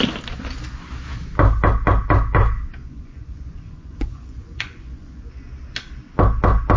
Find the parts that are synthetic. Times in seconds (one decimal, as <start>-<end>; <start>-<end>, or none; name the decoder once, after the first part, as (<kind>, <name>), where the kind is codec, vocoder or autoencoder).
2.8-5.4 (vocoder, Vocos)